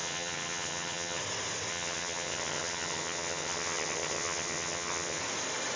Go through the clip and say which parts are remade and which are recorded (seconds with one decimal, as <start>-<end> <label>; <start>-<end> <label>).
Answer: 0.0-1.2 remade; 1.2-1.7 recorded; 1.7-5.2 remade; 5.2-5.8 recorded